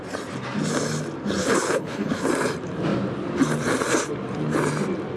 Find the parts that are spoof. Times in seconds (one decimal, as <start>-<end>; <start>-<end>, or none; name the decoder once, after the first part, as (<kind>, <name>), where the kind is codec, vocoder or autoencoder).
1.4-2.3 (codec, HILCodec)